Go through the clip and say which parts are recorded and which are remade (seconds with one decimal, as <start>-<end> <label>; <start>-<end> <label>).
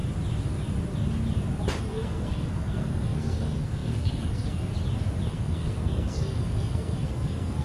0.0-1.8 recorded; 1.8-4.7 remade; 4.7-5.3 recorded; 5.3-7.6 remade